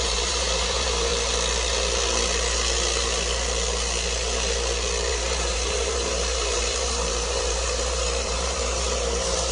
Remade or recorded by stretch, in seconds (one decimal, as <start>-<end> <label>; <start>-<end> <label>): 0.0-1.1 remade; 1.1-5.1 recorded; 5.1-9.5 remade